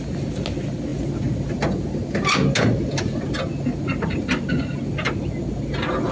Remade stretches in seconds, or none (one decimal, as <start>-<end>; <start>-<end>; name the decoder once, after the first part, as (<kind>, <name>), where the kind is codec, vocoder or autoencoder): none